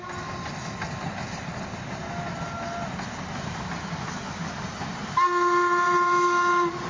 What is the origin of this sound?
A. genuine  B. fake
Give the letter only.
A